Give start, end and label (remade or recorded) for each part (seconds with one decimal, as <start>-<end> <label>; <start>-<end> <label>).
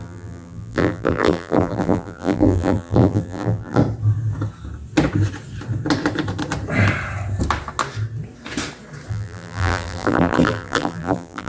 0.0-3.8 remade; 3.8-9.1 recorded; 9.1-11.5 remade